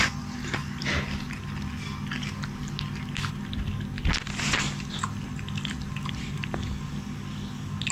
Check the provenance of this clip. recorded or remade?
recorded